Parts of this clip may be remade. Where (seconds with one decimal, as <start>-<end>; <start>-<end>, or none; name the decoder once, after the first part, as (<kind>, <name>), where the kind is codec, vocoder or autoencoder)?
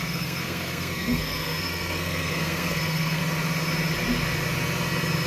0.0-3.2 (codec, SNAC)